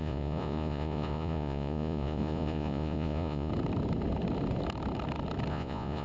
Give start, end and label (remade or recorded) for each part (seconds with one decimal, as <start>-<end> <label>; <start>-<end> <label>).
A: 0.0-3.5 remade; 3.5-5.5 recorded; 5.5-6.0 remade